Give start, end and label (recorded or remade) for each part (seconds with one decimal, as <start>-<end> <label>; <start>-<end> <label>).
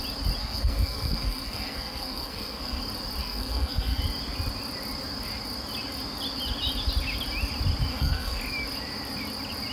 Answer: 0.0-0.4 recorded; 0.4-2.8 remade; 2.8-3.2 recorded; 3.2-4.0 remade; 4.0-7.9 recorded; 7.9-8.4 remade; 8.4-9.7 recorded